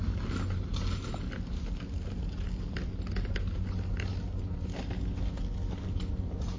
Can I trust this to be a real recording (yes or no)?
yes